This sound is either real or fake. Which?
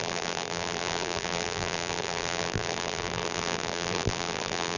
fake